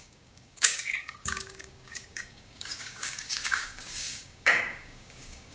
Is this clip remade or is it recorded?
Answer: remade